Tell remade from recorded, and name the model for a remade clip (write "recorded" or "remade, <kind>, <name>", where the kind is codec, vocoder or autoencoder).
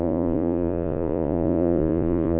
remade, vocoder, Vocos